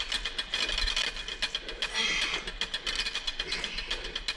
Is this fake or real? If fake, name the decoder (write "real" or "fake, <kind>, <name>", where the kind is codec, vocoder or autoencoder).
real